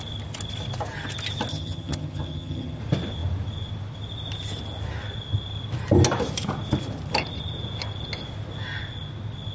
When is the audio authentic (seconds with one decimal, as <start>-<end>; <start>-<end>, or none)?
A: 0.0-1.5; 2.8-9.5

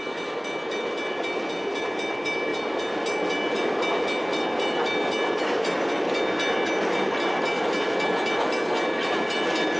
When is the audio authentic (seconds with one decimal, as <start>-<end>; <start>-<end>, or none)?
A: 0.0-9.8

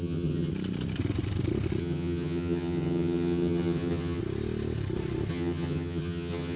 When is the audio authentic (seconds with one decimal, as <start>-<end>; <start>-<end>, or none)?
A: 0.5-1.8; 4.2-5.3

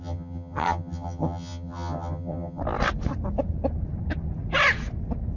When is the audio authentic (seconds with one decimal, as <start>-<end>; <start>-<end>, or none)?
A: 2.6-5.4

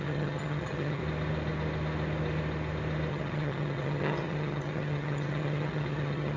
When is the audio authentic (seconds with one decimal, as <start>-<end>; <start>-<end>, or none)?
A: 1.0-3.1

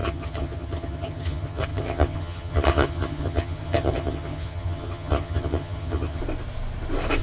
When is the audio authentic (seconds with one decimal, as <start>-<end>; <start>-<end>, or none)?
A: 6.2-7.2

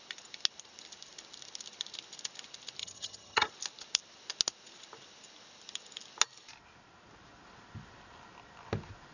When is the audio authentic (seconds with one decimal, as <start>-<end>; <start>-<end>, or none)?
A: 0.0-2.8; 3.5-9.1

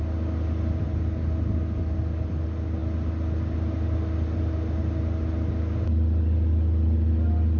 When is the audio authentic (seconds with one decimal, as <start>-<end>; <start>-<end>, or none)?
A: 0.0-7.6